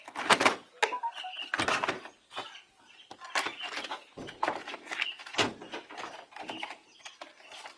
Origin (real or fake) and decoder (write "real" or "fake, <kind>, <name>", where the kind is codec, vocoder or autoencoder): real